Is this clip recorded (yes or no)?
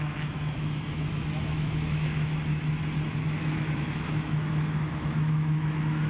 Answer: no